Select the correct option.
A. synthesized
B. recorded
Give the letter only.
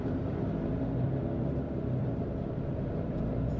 A